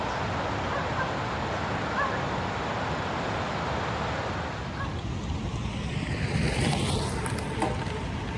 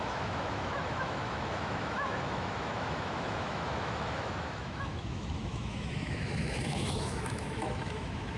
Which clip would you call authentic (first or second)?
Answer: first